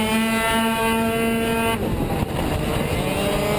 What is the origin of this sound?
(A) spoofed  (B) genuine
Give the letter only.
B